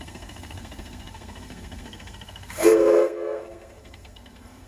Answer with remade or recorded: remade